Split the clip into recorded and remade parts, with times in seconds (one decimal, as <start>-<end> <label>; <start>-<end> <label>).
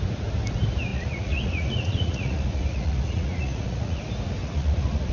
0.0-0.9 recorded; 0.9-4.0 remade; 4.0-4.4 recorded; 4.4-5.1 remade